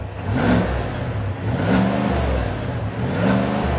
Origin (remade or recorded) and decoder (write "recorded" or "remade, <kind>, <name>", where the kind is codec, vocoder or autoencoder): recorded